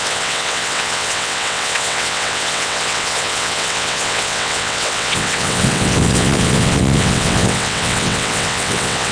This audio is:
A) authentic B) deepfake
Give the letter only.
B